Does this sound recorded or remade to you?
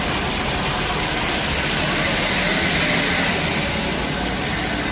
recorded